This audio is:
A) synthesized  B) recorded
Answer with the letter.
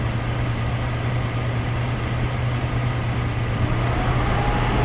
B